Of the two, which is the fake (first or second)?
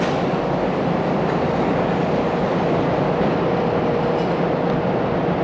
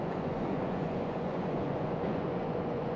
second